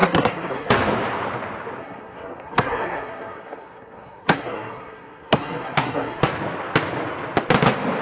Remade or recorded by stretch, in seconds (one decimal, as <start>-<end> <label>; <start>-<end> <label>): 0.0-0.7 remade; 0.7-1.8 recorded; 1.8-6.2 remade; 6.2-8.0 recorded